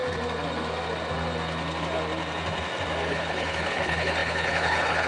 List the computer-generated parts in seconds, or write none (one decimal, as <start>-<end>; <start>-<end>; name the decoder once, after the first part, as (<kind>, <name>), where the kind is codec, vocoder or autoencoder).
3.1-5.1 (codec, HILCodec)

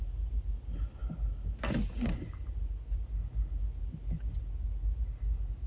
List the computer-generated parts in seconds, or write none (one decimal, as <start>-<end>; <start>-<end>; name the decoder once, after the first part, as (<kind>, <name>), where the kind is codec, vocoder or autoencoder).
none

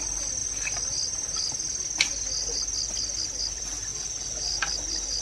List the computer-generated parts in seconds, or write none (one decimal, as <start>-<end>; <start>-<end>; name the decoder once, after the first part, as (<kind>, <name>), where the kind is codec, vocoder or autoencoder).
none

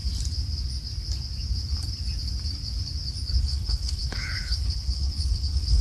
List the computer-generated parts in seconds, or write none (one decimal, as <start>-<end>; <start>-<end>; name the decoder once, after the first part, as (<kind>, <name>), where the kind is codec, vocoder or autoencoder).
3.4-5.8 (codec, HILCodec)

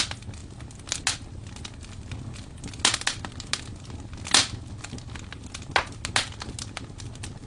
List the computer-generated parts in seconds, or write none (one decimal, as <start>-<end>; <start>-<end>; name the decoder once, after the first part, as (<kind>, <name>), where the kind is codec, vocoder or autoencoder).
none